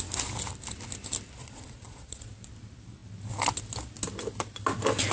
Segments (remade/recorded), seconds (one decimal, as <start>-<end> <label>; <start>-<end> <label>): 0.0-1.4 recorded; 1.4-2.3 remade; 2.3-5.1 recorded